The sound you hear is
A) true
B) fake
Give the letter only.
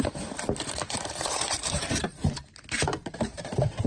B